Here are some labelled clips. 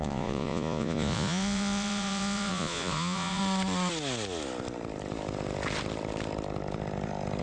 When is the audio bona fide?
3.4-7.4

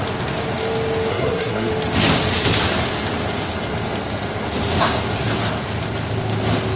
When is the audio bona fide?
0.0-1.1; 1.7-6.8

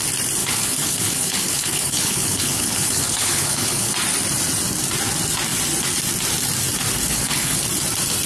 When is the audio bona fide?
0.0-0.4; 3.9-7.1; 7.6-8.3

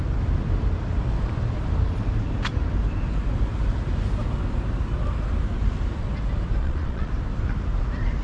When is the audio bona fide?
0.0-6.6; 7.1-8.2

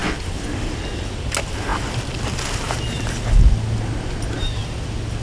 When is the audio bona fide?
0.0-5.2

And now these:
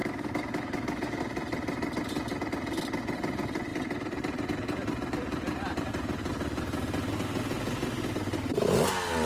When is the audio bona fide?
1.2-9.3

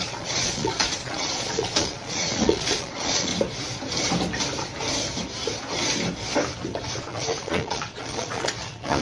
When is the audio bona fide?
3.3-7.0